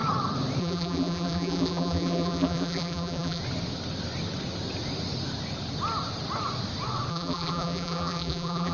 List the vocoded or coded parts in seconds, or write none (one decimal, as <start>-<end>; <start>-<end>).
0.6-3.4; 7.1-8.7